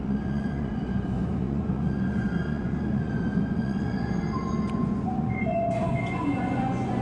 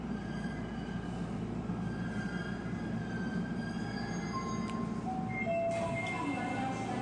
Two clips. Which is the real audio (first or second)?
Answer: second